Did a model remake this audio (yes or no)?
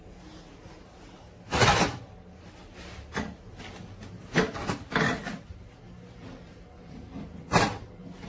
no